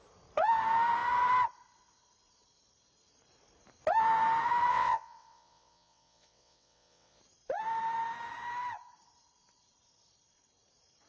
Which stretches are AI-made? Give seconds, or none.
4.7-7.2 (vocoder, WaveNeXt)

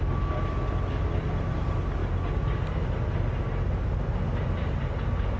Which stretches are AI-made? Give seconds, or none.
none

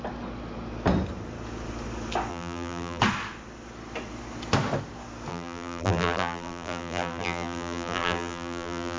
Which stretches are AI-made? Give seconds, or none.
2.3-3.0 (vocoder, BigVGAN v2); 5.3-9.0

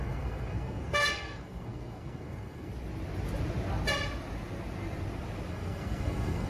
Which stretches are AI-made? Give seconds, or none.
0.0-2.7 (codec, SNAC); 5.5-6.5

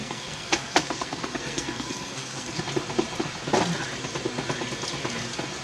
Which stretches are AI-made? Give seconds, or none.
0.0-2.6 (codec, SNAC)

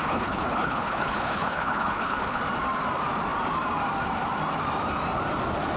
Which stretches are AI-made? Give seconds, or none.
0.0-2.4 (codec, HILCodec)